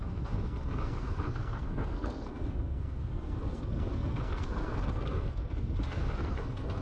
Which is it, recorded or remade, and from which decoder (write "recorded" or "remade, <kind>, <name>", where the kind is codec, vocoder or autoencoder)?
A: remade, codec, SNAC